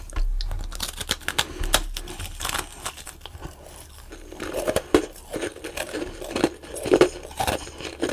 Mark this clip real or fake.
real